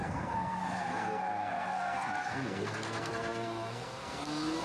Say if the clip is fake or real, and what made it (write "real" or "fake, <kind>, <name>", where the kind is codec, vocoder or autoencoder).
fake, codec, SNAC